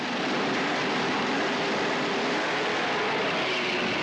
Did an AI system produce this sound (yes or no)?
yes